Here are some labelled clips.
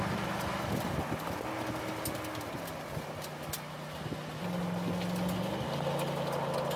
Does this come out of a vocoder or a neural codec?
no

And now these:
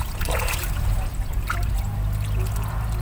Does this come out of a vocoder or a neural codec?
no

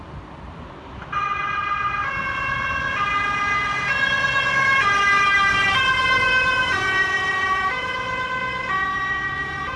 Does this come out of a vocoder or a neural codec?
no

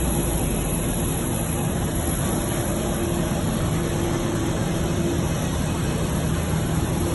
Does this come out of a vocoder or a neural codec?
no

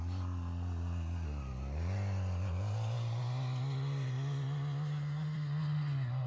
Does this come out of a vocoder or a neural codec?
no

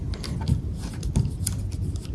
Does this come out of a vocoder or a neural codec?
no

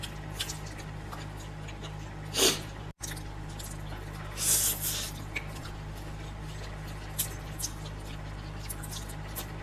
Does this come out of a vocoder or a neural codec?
no